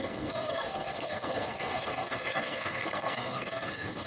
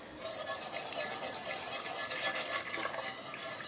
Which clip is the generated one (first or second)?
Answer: first